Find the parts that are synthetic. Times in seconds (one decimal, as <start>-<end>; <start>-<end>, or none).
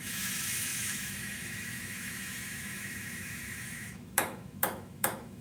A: 0.0-5.4